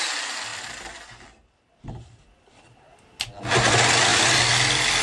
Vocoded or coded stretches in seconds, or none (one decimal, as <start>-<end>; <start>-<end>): none